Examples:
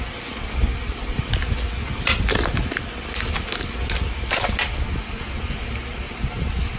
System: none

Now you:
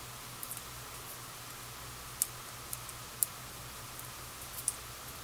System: none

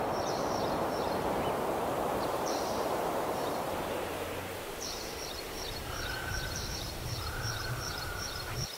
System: vocoder, BigVGAN v2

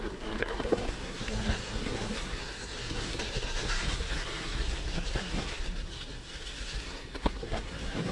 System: codec, SNAC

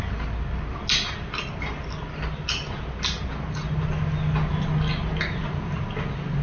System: none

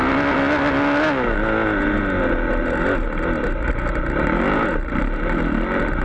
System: none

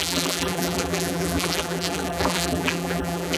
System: vocoder, BigVGAN v2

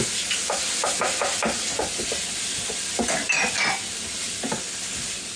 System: none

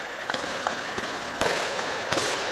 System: codec, HILCodec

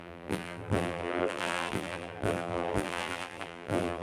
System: vocoder, BigVGAN v2